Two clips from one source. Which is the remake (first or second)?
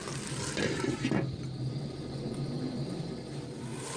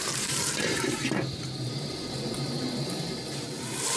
second